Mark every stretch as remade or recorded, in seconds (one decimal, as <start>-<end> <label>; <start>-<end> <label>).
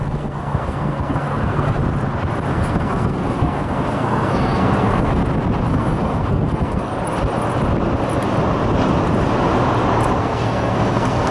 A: 0.0-1.8 remade; 1.8-2.5 recorded; 2.5-5.2 remade; 5.2-5.7 recorded; 5.7-6.9 remade; 6.9-10.2 recorded; 10.2-11.3 remade